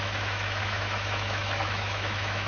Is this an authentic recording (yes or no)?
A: no